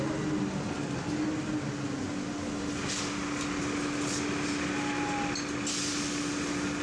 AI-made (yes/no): no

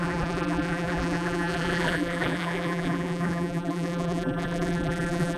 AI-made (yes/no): yes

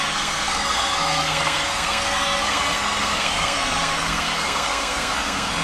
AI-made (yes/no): yes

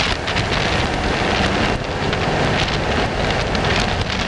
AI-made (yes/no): no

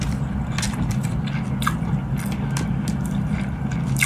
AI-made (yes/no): no